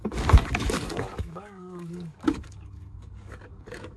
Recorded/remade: remade